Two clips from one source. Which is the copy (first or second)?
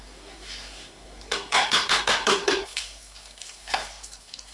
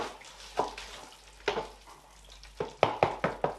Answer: first